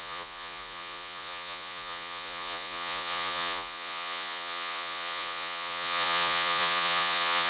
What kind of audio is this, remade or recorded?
remade